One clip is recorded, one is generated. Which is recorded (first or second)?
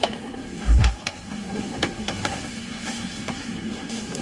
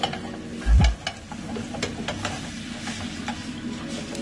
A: second